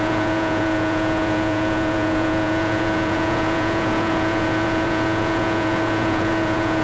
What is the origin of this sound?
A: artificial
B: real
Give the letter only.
A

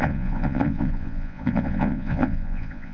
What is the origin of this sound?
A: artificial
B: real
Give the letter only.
A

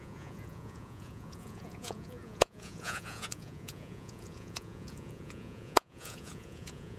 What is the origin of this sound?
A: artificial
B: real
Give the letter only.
A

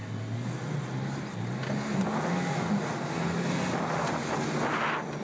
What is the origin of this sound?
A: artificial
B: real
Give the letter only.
B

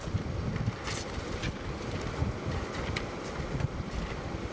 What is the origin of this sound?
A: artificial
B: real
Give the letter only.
B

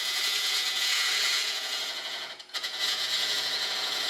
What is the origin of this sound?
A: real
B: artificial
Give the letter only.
B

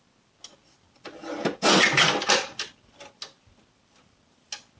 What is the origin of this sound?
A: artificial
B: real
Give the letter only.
B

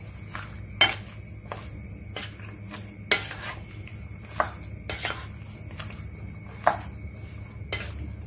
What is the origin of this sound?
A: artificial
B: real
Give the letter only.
B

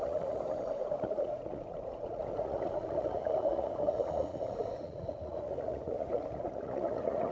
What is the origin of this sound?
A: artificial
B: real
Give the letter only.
A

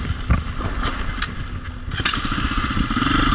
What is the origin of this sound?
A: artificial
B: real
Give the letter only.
B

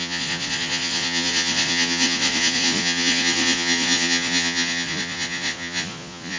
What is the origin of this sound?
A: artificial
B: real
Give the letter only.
A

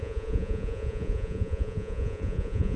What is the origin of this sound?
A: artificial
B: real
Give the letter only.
A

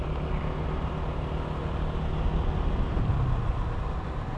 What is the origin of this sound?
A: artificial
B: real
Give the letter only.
B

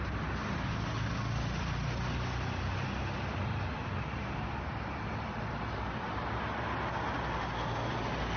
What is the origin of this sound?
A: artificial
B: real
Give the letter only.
B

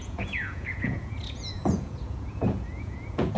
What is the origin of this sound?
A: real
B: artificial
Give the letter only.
B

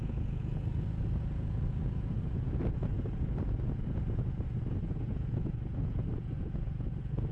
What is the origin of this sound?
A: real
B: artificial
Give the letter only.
B